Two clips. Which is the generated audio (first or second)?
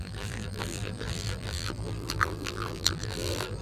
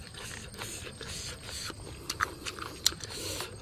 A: first